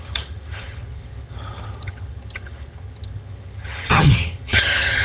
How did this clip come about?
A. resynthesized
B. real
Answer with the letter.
A